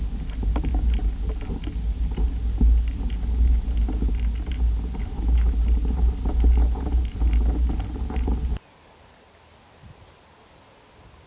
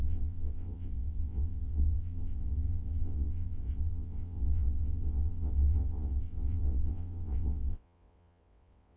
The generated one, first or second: second